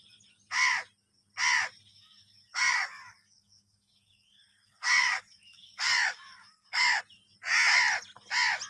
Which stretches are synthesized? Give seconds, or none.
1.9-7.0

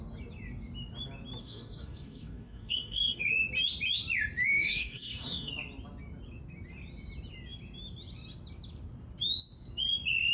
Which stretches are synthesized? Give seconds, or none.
1.4-3.2; 4.5-5.5

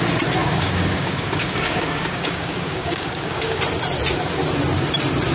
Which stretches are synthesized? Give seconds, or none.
0.4-3.6

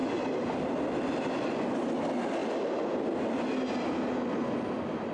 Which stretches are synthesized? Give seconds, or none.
none

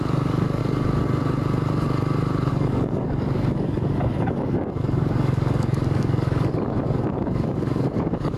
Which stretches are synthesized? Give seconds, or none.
0.0-0.6; 2.5-8.4

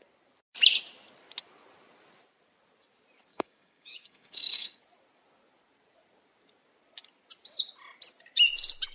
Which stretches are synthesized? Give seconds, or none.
3.3-4.8